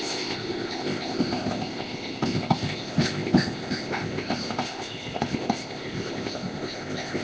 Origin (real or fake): fake